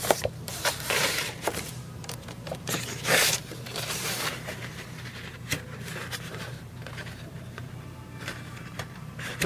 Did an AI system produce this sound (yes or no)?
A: yes